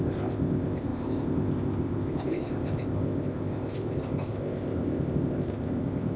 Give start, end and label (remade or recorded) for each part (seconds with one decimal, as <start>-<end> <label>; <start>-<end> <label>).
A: 0.0-6.2 remade